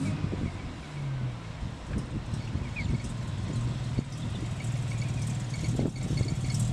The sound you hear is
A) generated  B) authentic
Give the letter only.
B